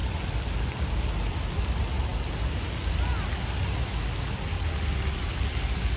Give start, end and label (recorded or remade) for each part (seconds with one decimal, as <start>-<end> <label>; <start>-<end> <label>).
0.0-2.1 remade; 2.1-6.0 recorded